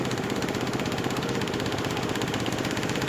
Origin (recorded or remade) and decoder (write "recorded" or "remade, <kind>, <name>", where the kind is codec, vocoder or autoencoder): remade, autoencoder, DAC-VAE